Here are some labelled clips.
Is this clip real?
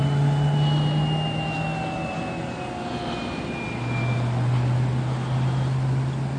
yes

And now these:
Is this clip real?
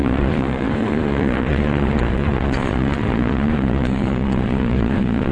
no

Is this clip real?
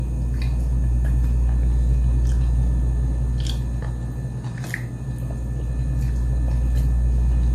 yes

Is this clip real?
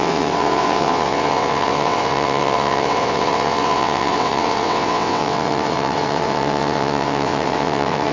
no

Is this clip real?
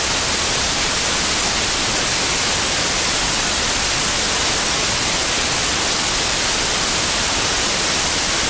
yes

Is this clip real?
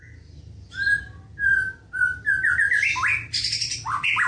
yes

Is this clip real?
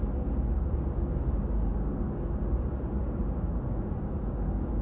no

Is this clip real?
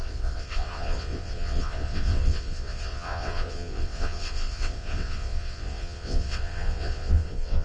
no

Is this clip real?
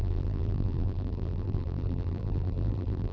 no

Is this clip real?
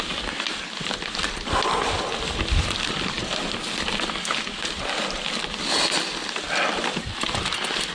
yes